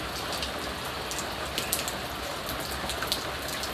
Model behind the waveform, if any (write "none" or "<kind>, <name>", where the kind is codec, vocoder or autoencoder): none